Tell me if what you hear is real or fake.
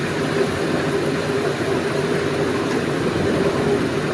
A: real